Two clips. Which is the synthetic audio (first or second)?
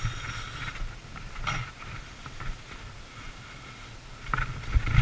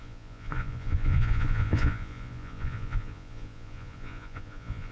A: second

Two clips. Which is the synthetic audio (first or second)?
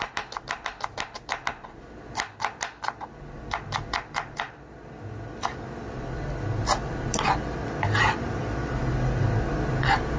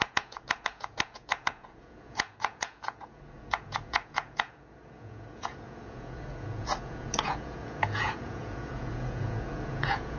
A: second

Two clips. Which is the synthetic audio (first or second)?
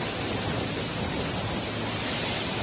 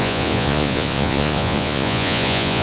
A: second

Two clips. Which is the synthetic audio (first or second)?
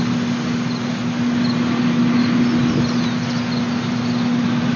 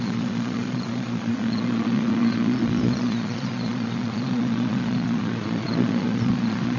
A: second